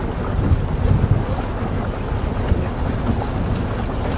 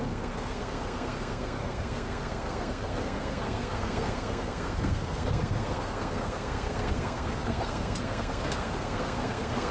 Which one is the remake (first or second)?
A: second